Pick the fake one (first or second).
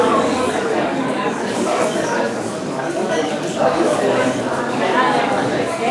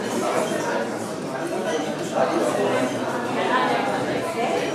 first